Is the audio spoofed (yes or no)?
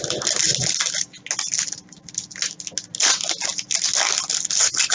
no